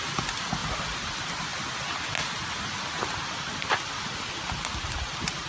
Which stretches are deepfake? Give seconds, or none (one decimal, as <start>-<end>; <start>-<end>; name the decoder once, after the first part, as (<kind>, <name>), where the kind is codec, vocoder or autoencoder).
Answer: none